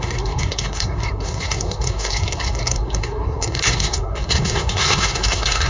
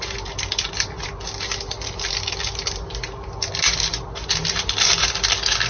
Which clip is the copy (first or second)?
first